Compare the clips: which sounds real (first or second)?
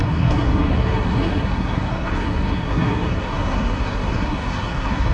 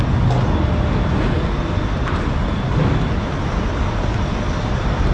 second